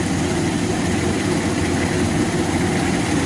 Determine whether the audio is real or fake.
real